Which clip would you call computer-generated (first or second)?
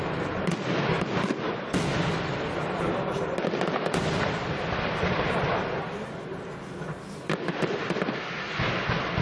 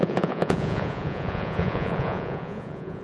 second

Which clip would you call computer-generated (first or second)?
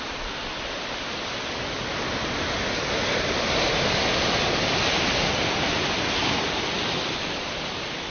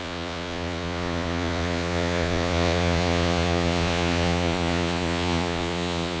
second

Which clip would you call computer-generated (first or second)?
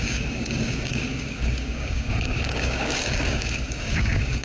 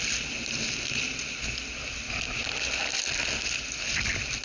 first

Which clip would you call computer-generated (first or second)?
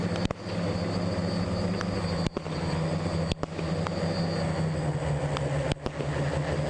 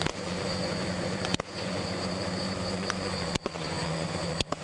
second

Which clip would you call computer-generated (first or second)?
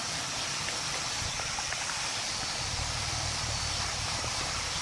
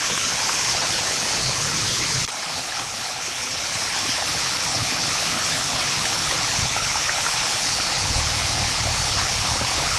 second